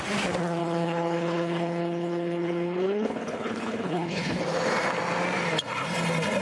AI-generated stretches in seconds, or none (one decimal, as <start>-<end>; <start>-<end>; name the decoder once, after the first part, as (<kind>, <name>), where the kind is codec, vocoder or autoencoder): 0.6-4.4 (codec, HILCodec)

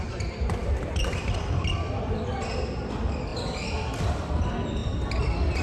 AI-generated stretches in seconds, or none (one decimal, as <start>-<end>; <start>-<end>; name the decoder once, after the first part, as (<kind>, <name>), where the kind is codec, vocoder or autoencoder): 0.6-2.3 (vocoder, BigVGAN v2); 3.3-4.3

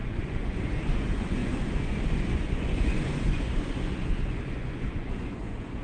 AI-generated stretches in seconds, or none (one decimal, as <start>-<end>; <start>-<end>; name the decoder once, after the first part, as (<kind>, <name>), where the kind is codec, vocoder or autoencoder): 0.0-5.8 (vocoder, Vocos)

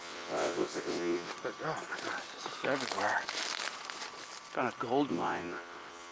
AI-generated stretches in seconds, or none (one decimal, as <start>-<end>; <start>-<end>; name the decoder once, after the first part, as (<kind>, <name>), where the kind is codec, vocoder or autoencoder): 0.0-1.3 (vocoder, WaveNeXt); 5.1-6.1

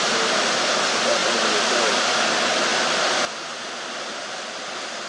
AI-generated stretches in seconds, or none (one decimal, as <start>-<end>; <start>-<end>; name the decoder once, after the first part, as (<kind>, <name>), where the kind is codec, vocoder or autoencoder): 2.7-3.3 (vocoder, BigVGAN v2)

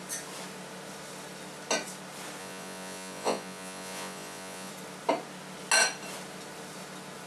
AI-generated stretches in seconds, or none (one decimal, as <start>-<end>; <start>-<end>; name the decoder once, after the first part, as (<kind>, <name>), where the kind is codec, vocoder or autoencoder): 2.4-4.7 (vocoder, Vocos)

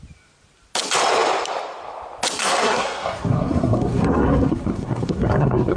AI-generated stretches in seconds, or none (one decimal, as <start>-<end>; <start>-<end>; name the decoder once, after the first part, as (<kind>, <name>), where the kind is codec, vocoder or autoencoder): 2.4-5.8 (codec, SNAC)

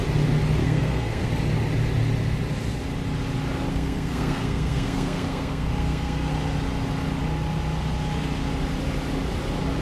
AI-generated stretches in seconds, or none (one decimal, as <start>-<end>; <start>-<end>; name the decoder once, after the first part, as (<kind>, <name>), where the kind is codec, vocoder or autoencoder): 0.6-1.3 (codec, SNAC); 3.7-6.3